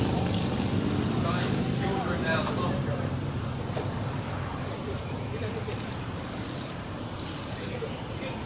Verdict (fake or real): fake